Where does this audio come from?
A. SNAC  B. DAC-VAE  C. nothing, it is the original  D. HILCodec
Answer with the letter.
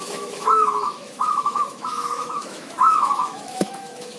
B